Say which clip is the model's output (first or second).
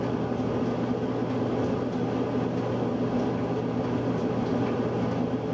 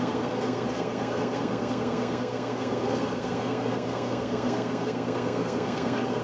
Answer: second